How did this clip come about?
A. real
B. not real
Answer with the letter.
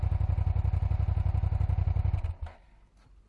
A